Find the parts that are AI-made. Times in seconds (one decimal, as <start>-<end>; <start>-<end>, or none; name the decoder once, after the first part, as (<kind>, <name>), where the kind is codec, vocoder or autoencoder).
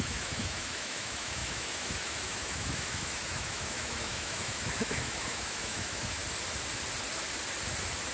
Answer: 0.0-6.2 (autoencoder, DAC-VAE)